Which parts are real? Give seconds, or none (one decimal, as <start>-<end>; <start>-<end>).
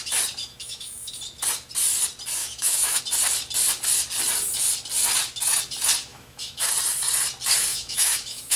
0.0-0.4; 1.1-2.4; 3.0-6.1; 6.7-7.7